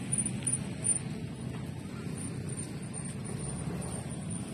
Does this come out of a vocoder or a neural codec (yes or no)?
no